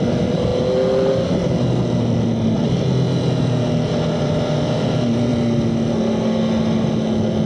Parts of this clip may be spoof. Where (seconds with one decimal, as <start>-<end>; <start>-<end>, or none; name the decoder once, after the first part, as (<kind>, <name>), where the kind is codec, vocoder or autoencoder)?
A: none